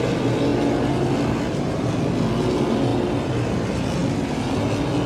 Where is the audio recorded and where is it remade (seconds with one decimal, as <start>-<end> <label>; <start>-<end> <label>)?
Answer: 0.0-2.9 recorded; 2.9-3.6 remade; 3.6-4.0 recorded; 4.0-4.6 remade; 4.6-5.1 recorded